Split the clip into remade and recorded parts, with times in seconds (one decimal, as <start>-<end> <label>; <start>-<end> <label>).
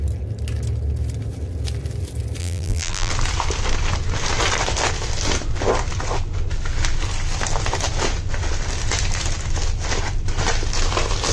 0.0-2.4 recorded; 2.4-3.1 remade; 3.1-11.3 recorded